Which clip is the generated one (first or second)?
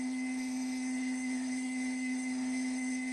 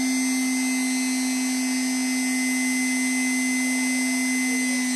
first